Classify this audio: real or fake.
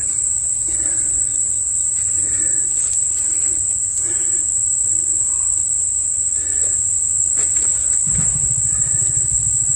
real